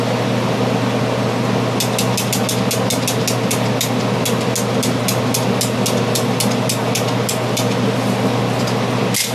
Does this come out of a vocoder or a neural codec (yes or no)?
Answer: no